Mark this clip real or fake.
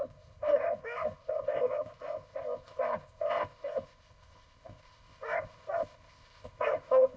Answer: fake